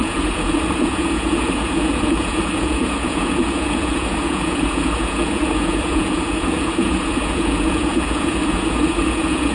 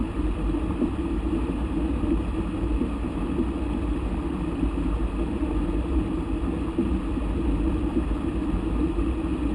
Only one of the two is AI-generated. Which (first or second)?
first